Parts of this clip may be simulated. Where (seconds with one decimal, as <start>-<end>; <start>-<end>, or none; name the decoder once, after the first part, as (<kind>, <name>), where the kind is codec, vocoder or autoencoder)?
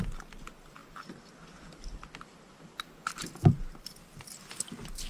none